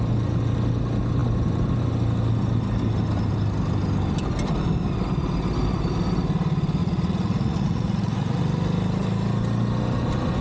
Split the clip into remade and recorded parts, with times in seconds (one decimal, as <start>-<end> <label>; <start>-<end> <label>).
0.0-6.8 recorded; 6.8-8.4 remade; 8.4-10.4 recorded